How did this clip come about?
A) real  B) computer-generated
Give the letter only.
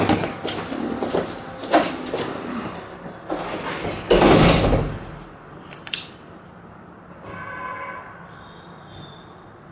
B